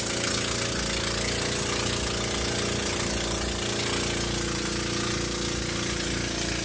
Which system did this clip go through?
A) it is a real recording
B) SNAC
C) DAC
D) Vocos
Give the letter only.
A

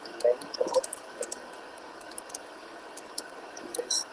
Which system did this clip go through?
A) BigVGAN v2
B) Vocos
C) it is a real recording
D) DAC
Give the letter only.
D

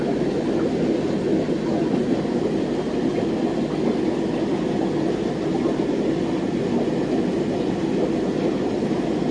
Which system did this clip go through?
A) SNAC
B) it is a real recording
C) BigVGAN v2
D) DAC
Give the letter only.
B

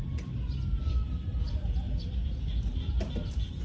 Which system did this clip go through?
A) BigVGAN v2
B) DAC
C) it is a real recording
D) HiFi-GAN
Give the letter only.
C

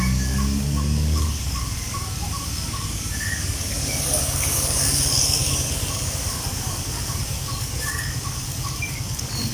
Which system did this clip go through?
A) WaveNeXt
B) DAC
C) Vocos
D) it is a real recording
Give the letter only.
B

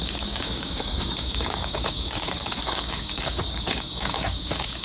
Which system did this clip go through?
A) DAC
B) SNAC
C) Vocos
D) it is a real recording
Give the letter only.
A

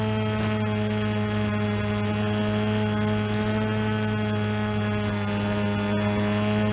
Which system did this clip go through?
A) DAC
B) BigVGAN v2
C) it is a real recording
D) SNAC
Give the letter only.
C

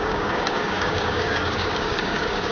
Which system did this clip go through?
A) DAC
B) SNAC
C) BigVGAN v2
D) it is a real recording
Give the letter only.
A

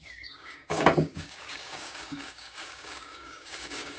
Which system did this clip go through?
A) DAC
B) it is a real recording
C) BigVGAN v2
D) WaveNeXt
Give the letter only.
A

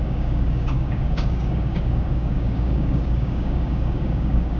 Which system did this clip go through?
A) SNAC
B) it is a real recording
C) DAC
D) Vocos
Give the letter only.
C